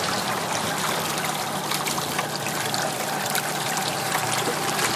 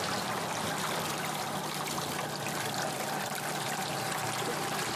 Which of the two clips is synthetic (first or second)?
first